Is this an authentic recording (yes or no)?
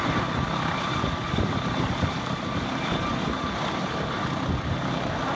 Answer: yes